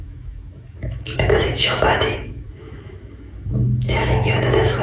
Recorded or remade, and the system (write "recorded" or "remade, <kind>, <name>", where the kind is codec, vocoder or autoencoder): remade, autoencoder, DAC-VAE